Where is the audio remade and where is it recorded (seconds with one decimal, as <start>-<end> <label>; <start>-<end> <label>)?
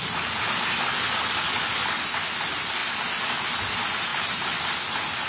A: 0.0-5.3 recorded